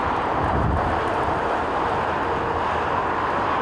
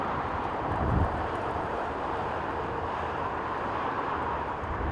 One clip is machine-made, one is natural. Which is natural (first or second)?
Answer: first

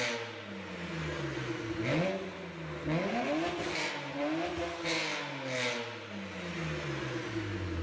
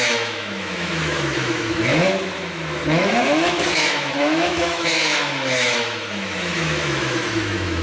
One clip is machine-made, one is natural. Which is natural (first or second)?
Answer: first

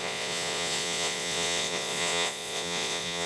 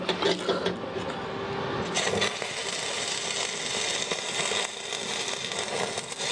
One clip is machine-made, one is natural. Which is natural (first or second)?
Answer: second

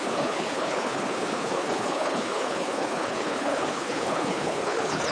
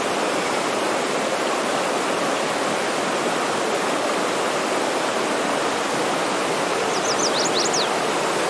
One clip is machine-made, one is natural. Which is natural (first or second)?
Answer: second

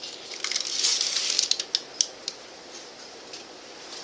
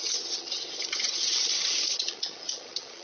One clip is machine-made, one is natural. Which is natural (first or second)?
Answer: first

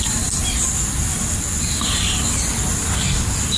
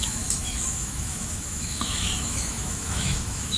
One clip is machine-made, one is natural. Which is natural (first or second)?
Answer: first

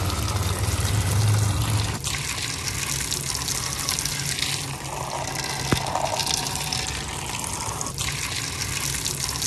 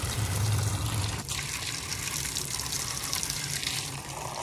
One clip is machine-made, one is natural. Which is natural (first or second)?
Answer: first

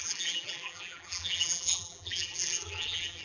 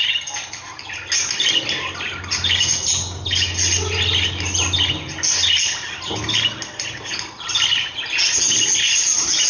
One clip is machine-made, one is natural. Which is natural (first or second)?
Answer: second